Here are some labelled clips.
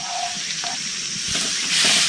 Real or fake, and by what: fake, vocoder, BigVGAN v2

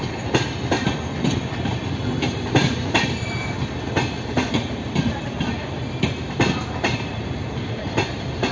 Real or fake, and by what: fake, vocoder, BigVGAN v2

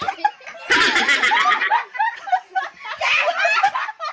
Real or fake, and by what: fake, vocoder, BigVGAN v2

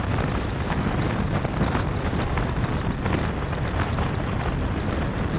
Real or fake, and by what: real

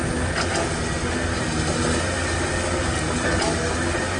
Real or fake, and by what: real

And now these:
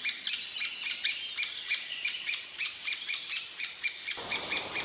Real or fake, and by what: fake, vocoder, BigVGAN v2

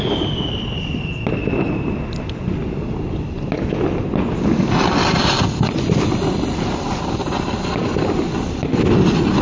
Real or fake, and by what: real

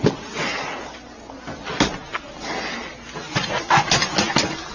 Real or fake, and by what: real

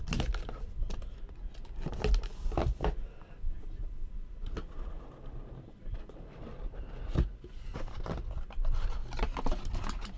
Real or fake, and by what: real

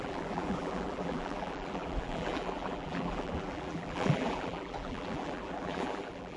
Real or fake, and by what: fake, vocoder, BigVGAN v2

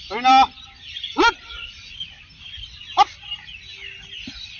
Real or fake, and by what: real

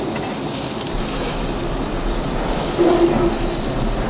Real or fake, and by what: real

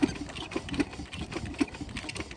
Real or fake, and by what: real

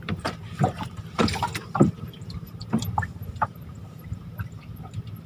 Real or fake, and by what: fake, vocoder, BigVGAN v2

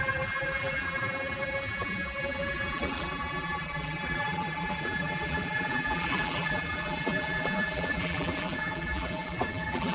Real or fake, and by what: fake, vocoder, BigVGAN v2